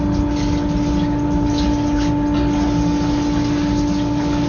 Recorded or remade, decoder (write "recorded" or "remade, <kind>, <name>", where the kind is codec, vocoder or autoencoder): recorded